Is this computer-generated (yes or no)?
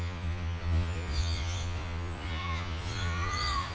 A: yes